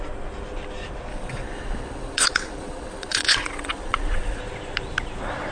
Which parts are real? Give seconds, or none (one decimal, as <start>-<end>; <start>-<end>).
0.0-1.1; 4.4-5.5